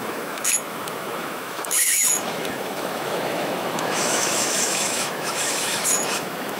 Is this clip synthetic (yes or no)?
yes